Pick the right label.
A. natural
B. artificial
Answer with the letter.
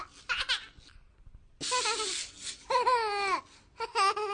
A